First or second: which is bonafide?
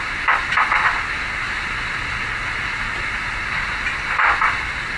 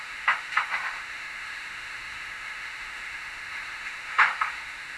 first